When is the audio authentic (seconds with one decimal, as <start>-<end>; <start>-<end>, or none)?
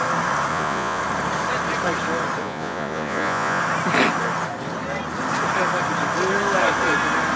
0.0-0.5; 1.0-2.4; 3.6-7.4